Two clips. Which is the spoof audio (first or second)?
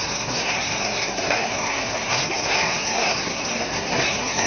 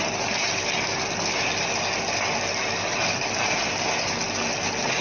first